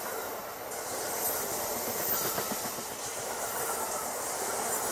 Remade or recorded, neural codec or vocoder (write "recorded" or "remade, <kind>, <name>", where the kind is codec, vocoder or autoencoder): recorded